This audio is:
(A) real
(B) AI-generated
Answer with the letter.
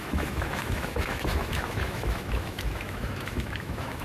B